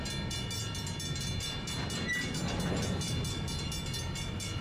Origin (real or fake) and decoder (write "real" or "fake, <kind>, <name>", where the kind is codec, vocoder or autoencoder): real